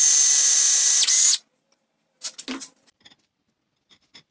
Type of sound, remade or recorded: recorded